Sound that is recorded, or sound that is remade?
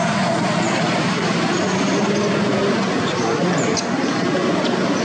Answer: recorded